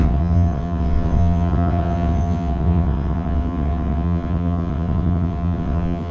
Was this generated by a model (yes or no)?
yes